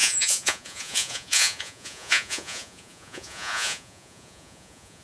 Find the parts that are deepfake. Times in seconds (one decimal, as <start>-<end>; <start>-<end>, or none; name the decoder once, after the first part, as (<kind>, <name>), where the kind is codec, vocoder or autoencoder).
0.0-5.0 (vocoder, Vocos)

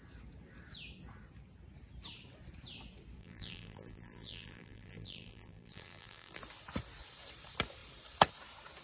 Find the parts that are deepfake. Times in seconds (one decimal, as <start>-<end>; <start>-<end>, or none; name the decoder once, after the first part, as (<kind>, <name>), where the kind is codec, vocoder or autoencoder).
3.2-6.4 (vocoder, BigVGAN v2)